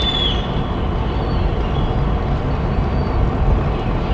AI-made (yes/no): no